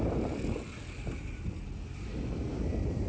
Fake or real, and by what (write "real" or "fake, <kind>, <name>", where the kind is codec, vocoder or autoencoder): real